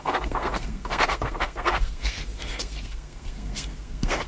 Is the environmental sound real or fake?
fake